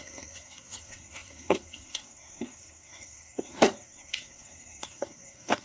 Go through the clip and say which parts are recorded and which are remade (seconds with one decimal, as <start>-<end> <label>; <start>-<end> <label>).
0.0-5.6 remade